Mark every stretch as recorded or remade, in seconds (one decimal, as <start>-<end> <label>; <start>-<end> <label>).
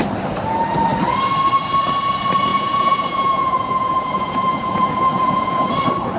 0.0-2.5 recorded; 2.5-5.7 remade; 5.7-6.2 recorded